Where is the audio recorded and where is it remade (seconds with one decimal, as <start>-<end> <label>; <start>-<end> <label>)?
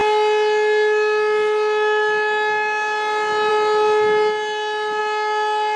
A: 0.0-5.8 recorded